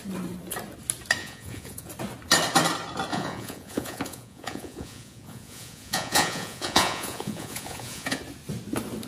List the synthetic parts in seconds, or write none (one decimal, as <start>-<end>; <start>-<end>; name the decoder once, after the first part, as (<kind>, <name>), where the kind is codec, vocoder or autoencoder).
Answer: 1.2-1.9 (vocoder, Vocos); 3.1-8.2